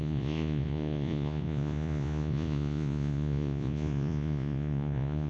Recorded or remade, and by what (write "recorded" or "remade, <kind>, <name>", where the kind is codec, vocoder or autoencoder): remade, vocoder, Vocos